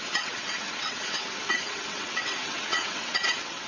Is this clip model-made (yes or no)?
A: yes